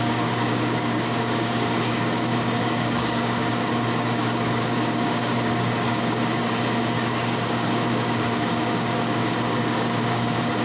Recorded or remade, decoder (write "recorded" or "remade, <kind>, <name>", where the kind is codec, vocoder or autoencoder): remade, codec, DAC